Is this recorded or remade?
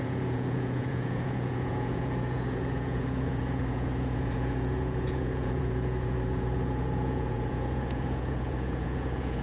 remade